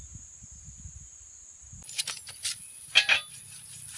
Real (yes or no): yes